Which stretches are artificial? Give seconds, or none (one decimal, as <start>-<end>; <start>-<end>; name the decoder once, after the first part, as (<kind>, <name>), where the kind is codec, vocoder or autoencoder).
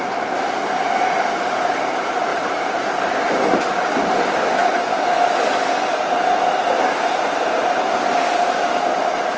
2.3-2.9 (vocoder, BigVGAN v2)